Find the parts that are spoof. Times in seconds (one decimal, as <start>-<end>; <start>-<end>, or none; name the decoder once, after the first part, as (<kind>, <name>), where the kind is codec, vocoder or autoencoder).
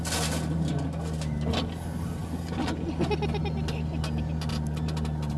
none